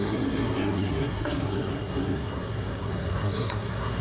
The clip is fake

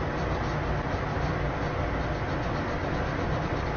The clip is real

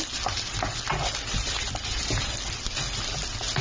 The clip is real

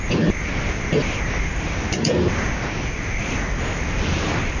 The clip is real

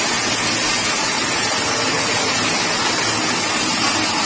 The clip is real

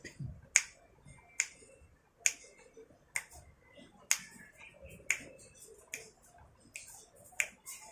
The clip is real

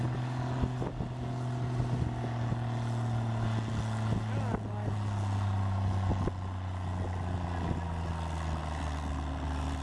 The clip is real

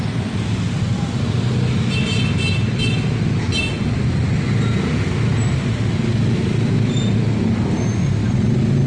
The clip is real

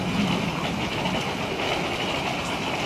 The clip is real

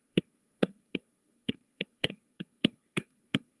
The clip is fake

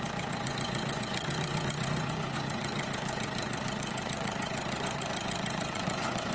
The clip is fake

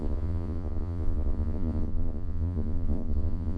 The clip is fake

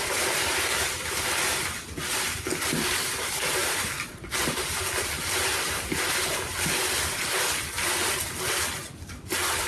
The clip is real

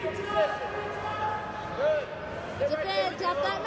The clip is real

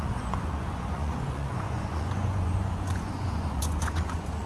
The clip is fake